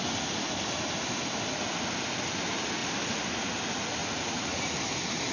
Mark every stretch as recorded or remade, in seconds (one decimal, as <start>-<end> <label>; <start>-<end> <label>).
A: 0.0-4.0 recorded; 4.0-4.6 remade; 4.6-5.3 recorded